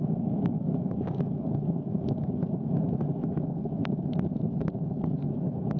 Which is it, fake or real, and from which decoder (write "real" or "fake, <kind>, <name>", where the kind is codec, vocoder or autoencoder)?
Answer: fake, autoencoder, DAC-VAE